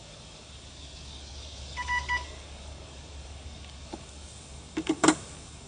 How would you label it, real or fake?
fake